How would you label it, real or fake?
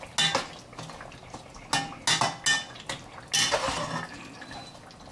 real